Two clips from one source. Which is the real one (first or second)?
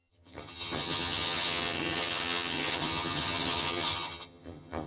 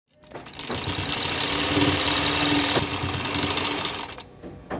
second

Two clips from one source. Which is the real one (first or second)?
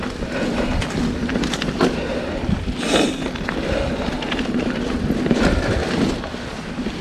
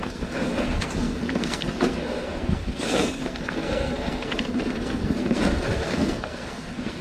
first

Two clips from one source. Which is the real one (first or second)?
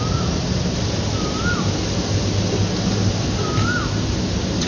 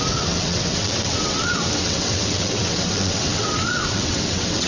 first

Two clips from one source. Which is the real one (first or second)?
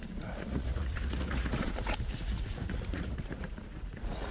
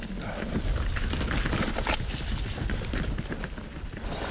second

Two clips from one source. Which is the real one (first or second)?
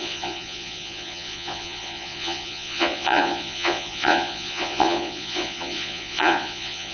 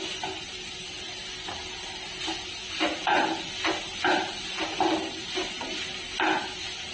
second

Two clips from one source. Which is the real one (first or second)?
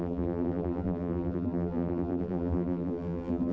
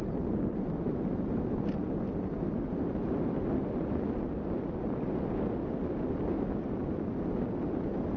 second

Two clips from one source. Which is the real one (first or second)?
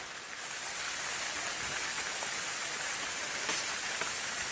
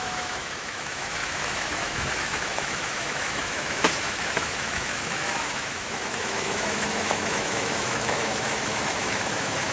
first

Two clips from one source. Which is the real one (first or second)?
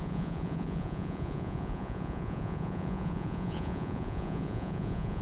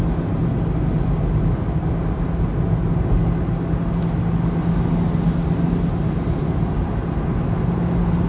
second